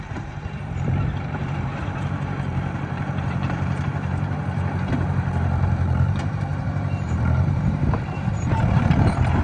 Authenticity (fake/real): fake